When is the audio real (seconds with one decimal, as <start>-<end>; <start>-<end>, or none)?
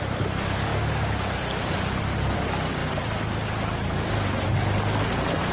2.8-5.0